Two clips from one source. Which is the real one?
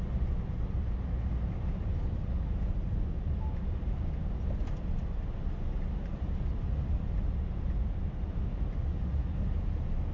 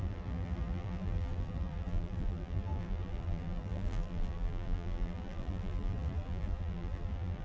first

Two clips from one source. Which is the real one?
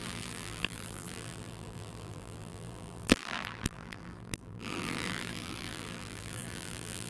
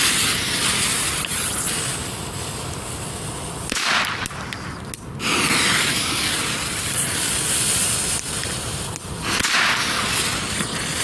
second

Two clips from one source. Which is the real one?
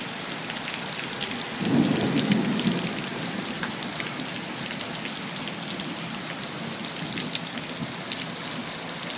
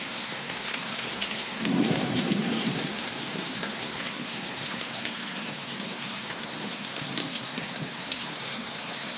first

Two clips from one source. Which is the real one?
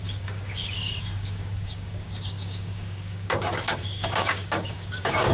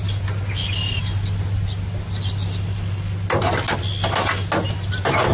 second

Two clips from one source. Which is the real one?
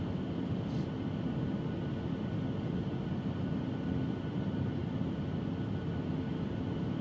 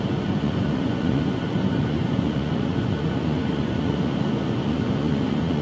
first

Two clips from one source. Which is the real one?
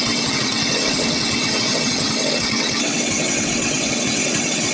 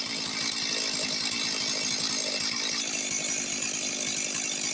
second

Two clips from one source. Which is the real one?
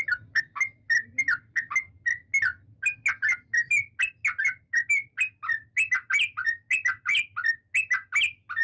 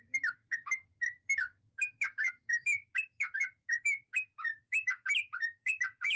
first